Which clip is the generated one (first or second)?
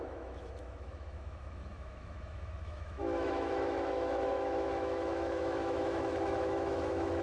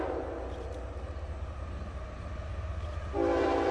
first